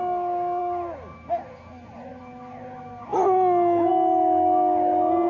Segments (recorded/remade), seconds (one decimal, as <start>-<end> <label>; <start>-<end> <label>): 0.0-5.3 recorded